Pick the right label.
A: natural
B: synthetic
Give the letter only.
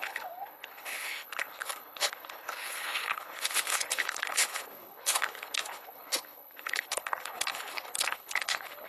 B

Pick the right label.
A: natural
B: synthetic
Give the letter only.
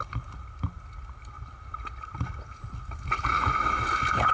A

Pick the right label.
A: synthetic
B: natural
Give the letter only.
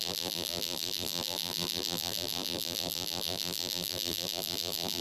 A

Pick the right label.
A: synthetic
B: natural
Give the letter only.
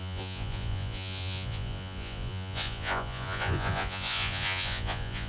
A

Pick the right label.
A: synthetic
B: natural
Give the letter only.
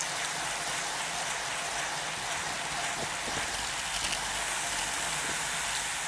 B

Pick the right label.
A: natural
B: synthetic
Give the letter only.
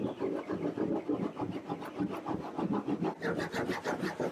A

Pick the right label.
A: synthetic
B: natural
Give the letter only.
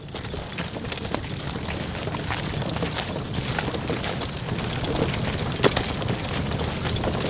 B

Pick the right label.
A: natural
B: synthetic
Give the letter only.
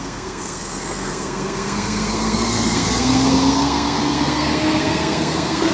B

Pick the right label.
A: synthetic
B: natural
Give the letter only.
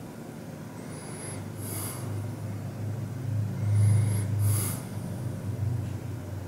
B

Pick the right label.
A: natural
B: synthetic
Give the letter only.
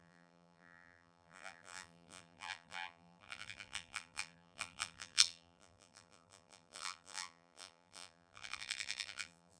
B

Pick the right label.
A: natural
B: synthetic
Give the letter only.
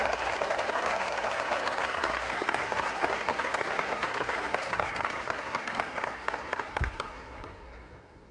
B